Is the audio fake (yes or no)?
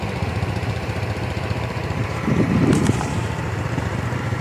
yes